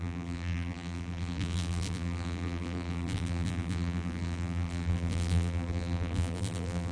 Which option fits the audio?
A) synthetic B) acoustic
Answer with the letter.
A